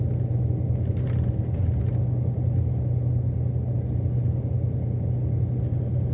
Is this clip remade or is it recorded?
recorded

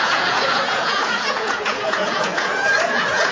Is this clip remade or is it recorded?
remade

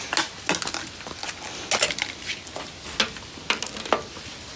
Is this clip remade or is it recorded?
recorded